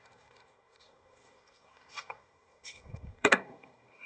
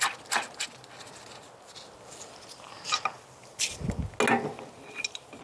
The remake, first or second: first